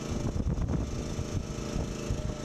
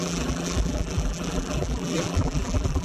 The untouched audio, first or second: first